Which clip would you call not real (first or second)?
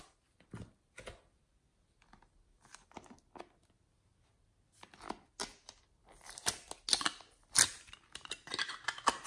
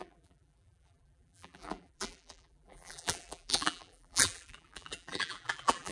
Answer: second